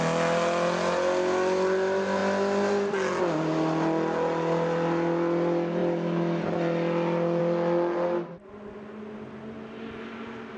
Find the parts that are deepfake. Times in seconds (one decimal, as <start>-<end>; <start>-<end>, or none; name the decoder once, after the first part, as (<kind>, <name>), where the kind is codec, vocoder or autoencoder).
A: none